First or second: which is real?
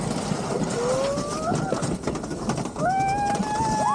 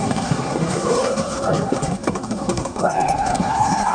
first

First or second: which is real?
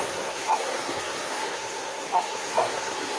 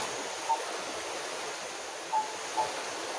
second